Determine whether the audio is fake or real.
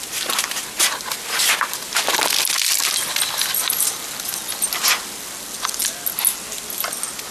real